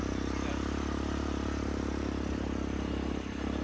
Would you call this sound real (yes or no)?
yes